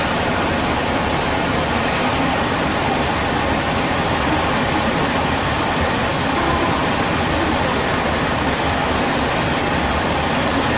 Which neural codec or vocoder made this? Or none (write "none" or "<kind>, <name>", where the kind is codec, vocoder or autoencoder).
none